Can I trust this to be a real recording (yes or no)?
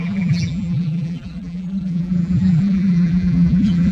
no